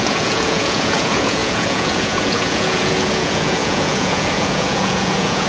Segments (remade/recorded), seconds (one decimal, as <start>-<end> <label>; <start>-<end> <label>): 0.0-5.5 remade